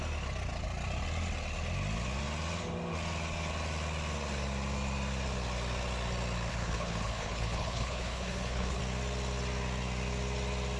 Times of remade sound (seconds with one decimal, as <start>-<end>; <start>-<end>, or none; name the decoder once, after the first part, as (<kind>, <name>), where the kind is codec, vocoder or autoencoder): 6.5-8.8 (codec, HILCodec)